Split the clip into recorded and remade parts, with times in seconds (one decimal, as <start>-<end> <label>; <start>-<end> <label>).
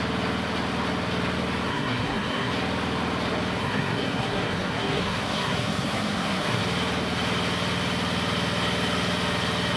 0.0-1.7 recorded; 1.7-2.5 remade; 2.5-3.6 recorded; 3.6-6.6 remade; 6.6-9.8 recorded